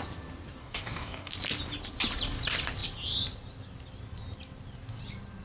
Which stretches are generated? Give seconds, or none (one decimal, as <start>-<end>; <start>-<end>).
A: 0.6-1.3